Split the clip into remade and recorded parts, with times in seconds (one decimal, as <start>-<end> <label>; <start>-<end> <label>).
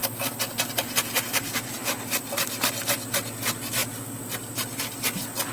0.0-5.5 recorded